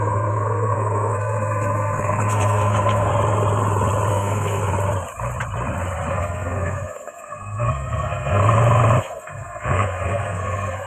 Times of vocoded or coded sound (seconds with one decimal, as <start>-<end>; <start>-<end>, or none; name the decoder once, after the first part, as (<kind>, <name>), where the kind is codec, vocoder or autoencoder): 0.0-3.1 (codec, SNAC); 4.1-4.6; 6.1-8.4; 9.0-10.9